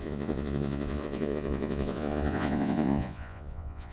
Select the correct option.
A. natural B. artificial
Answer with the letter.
B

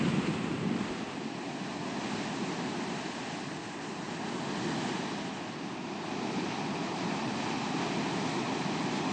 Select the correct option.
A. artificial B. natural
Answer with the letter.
B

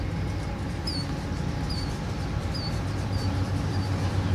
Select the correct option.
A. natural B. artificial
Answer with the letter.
A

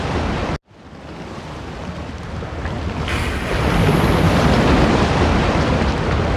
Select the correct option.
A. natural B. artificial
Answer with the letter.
A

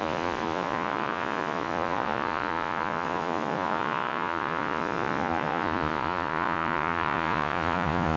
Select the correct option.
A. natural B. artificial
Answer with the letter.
B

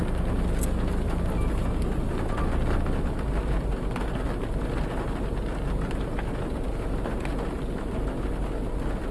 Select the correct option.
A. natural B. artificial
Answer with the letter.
A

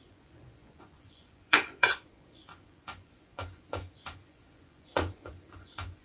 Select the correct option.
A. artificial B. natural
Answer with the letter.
A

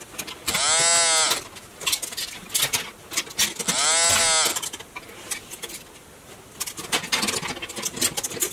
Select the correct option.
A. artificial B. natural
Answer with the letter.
B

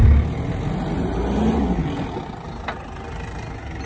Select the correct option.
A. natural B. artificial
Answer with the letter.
A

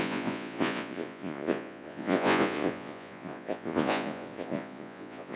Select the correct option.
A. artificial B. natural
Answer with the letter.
A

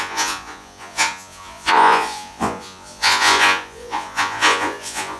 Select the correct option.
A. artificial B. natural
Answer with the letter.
A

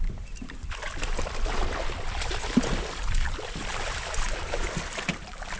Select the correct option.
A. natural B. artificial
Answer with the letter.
A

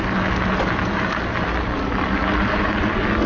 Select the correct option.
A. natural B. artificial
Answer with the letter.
A